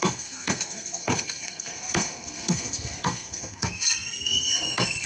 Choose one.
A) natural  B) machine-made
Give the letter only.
B